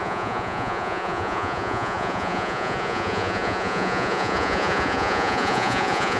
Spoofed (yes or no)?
yes